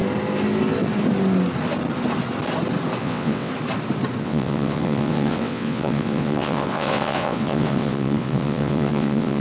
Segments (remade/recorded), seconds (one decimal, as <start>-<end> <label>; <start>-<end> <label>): 0.0-3.0 recorded; 3.0-3.5 remade; 3.5-4.2 recorded; 4.2-9.4 remade

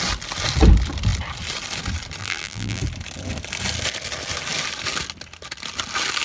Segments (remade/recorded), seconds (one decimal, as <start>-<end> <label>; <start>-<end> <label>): 0.0-2.2 recorded; 2.2-2.8 remade; 2.8-6.2 recorded

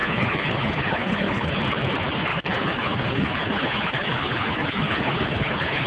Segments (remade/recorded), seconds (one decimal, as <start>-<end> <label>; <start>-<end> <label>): 0.0-1.5 remade; 1.5-2.3 recorded; 2.3-5.9 remade

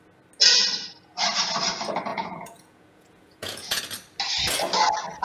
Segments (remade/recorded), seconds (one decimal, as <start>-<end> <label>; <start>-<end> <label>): 0.0-2.1 recorded; 2.1-3.8 remade; 3.8-5.2 recorded